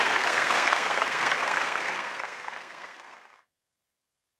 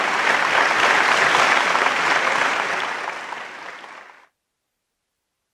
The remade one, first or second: first